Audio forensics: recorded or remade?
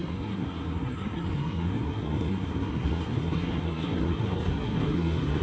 remade